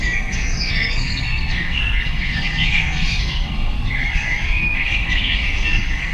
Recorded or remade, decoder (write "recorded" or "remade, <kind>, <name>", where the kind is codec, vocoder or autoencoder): remade, codec, SNAC